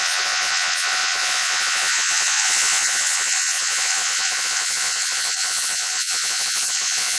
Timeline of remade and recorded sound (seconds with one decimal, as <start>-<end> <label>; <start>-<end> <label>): 0.0-7.2 remade